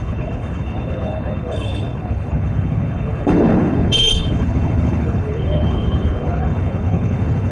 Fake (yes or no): yes